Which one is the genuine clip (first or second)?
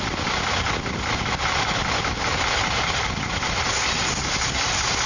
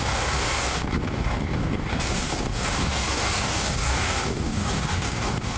first